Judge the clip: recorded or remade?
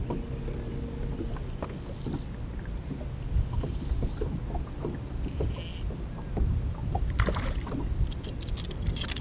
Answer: recorded